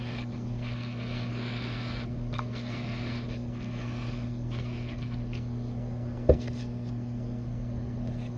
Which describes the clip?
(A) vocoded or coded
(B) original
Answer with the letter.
A